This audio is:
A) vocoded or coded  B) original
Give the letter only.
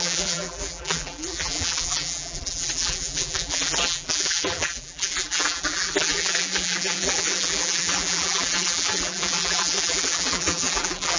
A